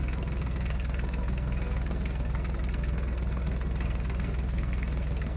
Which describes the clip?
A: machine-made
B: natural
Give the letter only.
A